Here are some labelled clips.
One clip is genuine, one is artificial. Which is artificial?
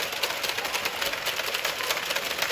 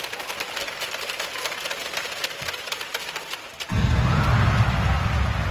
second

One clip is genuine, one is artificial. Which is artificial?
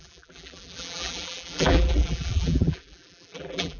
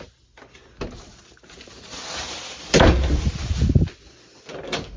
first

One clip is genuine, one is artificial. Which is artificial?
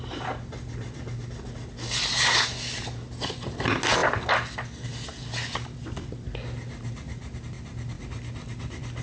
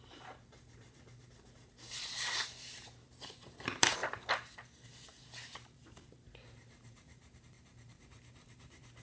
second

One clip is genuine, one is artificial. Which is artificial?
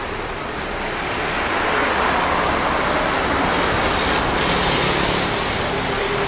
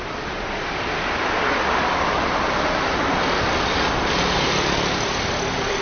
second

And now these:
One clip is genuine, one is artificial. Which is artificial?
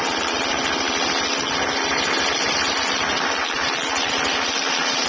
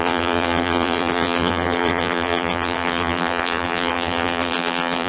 second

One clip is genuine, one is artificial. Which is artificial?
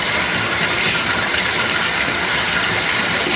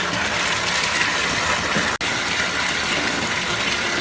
first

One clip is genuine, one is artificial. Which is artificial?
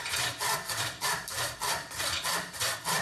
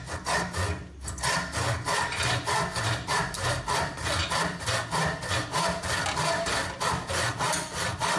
first